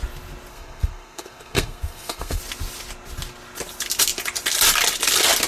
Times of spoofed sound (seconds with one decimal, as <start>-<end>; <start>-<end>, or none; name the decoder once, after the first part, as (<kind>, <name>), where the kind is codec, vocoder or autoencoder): 0.5-2.4 (codec, SNAC)